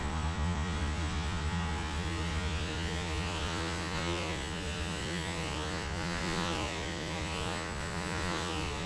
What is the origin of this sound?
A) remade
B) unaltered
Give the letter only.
A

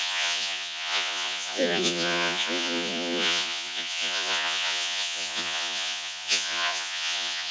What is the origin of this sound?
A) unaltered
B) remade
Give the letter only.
B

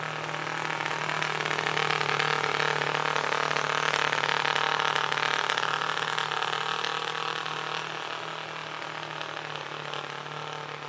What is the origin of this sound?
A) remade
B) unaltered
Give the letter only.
B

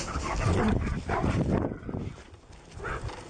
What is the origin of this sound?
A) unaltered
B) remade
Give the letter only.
A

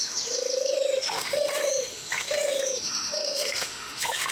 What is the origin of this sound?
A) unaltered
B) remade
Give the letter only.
B